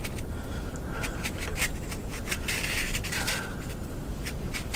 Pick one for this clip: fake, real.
real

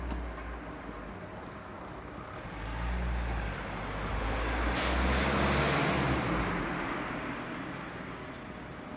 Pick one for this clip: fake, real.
real